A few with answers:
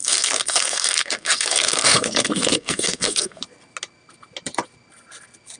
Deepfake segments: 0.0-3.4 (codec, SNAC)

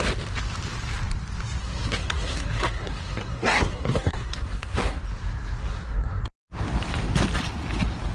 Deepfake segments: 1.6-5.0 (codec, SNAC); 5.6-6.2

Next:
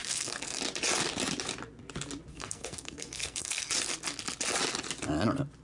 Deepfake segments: 0.0-0.6 (codec, SNAC); 2.3-3.7